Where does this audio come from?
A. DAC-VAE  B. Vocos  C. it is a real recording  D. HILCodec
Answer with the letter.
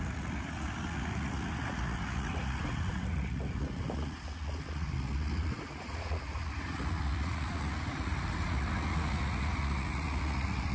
B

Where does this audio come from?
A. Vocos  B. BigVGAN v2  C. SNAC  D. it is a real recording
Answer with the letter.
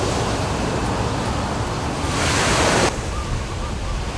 D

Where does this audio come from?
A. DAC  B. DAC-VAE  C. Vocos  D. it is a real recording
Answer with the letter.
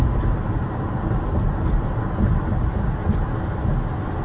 D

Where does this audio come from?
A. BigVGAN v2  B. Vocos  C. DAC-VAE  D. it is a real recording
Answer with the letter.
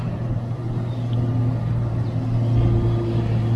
D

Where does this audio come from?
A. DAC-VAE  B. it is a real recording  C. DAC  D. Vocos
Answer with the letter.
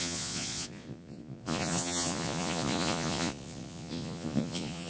D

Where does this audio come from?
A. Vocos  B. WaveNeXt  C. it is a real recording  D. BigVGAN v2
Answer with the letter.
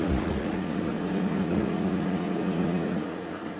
A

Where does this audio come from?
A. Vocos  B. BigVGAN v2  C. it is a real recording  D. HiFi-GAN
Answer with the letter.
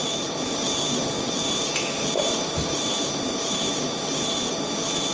C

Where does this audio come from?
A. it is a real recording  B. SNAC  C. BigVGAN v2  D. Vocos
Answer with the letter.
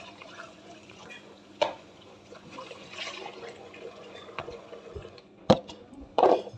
D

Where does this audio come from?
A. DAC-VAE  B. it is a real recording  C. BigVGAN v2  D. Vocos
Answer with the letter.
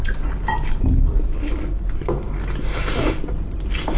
B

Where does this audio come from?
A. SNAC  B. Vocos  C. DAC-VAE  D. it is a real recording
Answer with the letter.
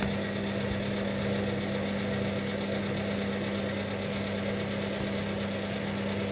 D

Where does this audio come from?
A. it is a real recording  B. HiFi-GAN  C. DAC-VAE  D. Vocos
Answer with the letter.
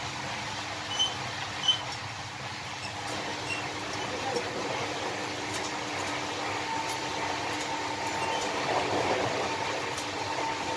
A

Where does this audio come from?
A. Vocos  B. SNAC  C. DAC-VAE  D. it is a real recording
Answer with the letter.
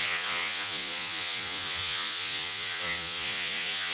A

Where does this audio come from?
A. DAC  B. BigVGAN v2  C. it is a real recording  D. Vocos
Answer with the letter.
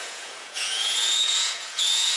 D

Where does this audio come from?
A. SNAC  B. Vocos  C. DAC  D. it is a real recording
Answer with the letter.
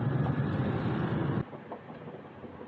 D